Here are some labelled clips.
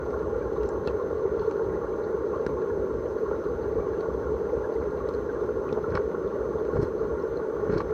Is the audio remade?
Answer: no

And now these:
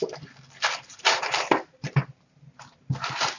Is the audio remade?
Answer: no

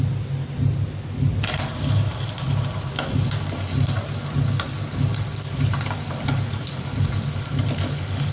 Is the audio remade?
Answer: no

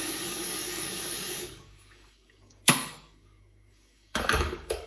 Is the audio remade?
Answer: yes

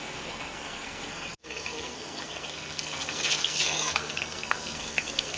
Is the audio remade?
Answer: yes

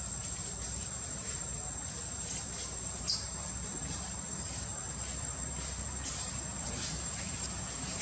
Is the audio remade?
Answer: yes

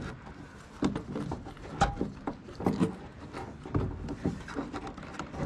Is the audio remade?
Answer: no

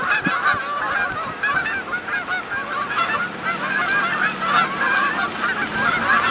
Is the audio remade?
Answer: no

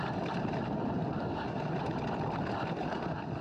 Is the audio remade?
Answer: yes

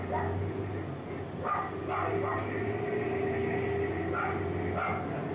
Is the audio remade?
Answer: no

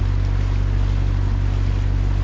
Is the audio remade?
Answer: no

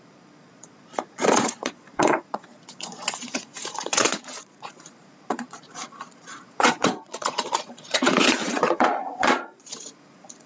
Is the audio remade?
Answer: yes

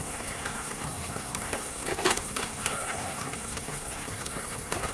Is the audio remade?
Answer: yes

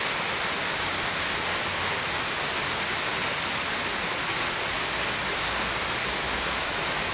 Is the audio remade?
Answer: no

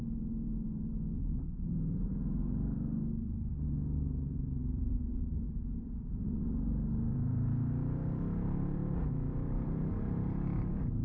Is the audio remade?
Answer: yes